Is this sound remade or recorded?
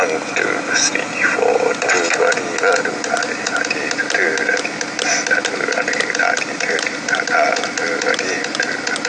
recorded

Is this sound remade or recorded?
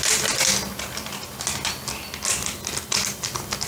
recorded